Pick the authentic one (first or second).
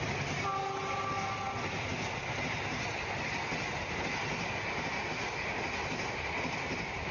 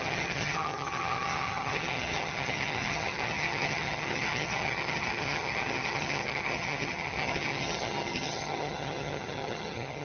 first